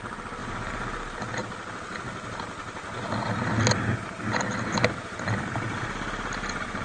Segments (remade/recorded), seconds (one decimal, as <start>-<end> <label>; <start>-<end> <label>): 0.0-6.8 recorded